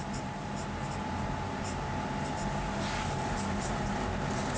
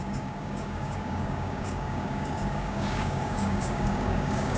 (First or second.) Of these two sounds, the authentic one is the first